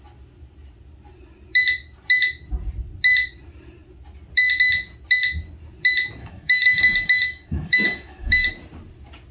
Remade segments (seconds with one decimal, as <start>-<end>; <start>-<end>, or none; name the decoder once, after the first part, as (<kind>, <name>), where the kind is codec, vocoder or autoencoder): 6.2-8.5 (autoencoder, DAC-VAE)